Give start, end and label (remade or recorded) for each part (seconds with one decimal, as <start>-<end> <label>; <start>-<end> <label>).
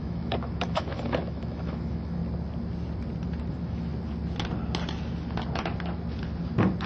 0.0-2.2 remade; 2.2-3.5 recorded; 3.5-3.9 remade; 3.9-6.9 recorded